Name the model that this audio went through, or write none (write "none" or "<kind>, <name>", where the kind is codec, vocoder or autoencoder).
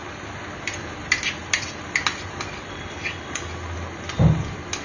none